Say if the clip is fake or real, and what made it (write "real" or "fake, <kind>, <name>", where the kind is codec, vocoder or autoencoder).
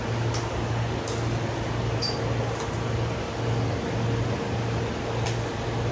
real